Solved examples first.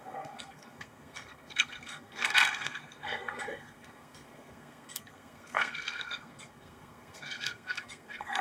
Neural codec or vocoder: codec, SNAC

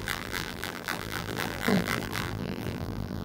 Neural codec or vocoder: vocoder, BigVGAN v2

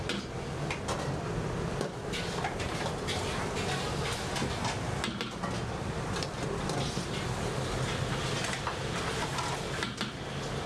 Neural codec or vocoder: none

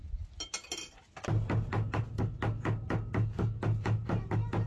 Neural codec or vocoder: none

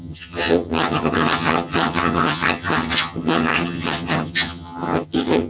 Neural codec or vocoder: vocoder, HiFi-GAN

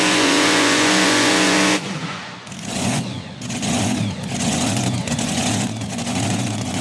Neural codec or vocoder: vocoder, Vocos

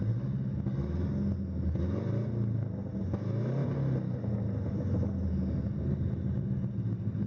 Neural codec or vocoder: none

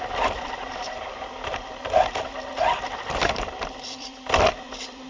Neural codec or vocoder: vocoder, BigVGAN v2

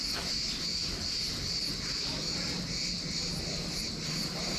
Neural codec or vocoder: none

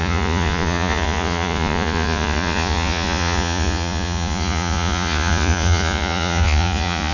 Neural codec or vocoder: vocoder, Vocos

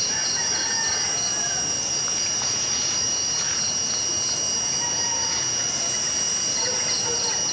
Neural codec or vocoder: none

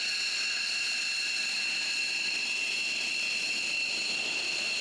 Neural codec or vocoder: none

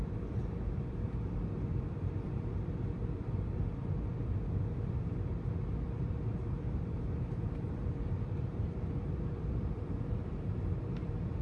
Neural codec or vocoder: vocoder, BigVGAN v2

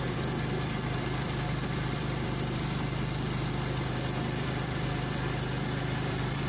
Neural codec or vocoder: vocoder, BigVGAN v2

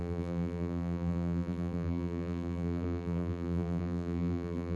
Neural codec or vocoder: vocoder, BigVGAN v2